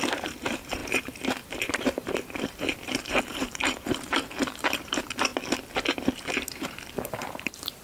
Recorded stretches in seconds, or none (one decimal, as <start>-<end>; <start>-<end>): 5.3-6.3